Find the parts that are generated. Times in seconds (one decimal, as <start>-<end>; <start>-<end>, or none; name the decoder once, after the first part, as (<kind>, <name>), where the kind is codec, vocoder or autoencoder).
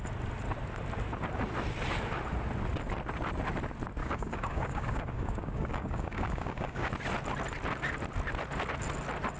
4.0-6.9 (codec, DAC)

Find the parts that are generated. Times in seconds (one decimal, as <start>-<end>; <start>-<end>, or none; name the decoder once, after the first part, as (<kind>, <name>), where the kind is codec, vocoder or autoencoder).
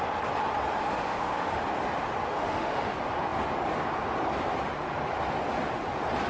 0.8-1.6 (autoencoder, DAC-VAE); 2.3-2.9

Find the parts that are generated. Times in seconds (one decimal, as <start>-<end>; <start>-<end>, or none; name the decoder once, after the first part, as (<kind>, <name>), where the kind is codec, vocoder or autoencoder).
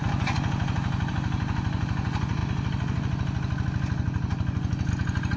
none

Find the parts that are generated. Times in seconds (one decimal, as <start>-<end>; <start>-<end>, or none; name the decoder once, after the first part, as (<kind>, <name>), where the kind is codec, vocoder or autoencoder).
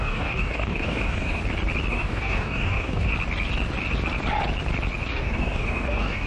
0.0-1.4 (codec, DAC); 1.9-3.1; 5.1-6.3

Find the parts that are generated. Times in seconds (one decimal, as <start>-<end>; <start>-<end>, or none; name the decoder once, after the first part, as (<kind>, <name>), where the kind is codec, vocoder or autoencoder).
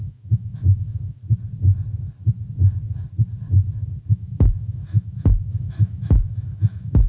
0.0-1.2 (autoencoder, DAC-VAE); 4.1-7.1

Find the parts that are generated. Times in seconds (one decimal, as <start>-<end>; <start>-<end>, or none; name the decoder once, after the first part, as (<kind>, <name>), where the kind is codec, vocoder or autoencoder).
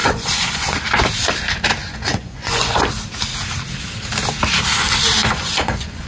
0.0-0.8 (vocoder, Vocos); 1.8-2.7; 5.2-6.1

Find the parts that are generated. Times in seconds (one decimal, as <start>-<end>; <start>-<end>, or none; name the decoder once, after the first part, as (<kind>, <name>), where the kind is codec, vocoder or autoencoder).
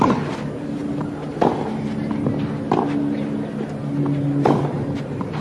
none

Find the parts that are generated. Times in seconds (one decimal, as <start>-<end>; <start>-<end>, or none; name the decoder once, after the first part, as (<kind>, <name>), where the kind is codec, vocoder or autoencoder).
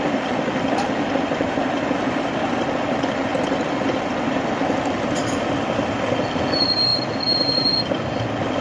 none